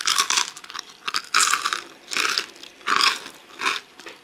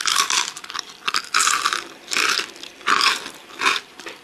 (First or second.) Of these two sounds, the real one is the first